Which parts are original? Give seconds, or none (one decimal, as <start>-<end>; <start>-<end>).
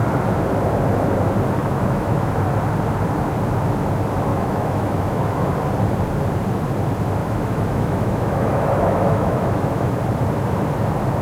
0.0-1.6; 2.3-4.3; 5.5-7.2; 9.9-11.2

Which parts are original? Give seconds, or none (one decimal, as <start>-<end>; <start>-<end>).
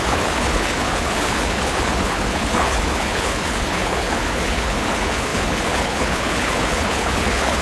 none